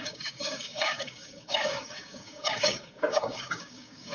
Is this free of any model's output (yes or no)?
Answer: no